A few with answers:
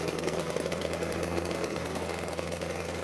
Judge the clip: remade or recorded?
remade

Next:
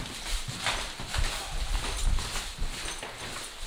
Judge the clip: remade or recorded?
recorded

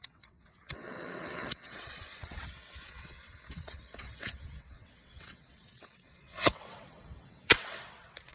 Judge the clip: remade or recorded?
remade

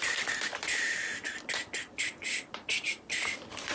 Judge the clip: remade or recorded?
recorded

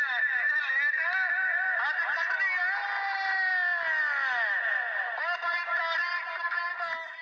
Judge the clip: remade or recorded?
recorded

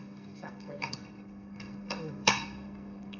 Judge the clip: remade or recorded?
remade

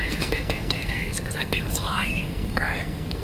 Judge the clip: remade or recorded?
remade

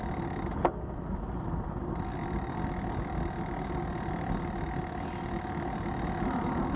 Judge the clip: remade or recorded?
recorded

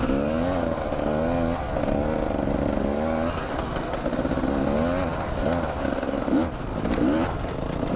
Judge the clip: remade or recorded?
recorded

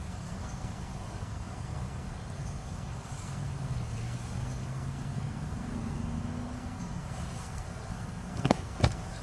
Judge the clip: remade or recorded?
remade